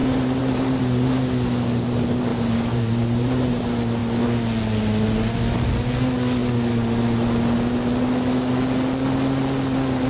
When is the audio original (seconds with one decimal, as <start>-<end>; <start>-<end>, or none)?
0.8-2.3; 3.6-10.1